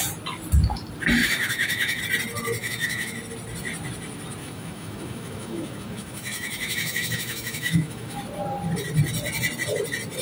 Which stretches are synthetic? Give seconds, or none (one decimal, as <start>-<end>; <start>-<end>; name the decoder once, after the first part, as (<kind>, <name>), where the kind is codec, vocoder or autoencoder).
1.2-2.0 (autoencoder, DAC-VAE); 2.6-3.2; 4.4-8.2